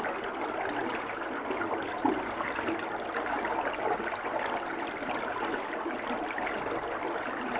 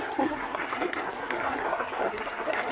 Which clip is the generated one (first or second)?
second